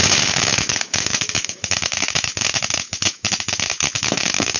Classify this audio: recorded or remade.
remade